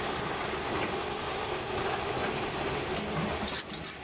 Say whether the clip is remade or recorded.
remade